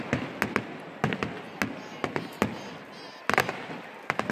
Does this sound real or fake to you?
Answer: real